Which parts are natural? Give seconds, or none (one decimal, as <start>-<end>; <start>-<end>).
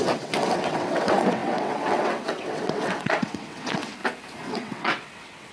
4.0-4.5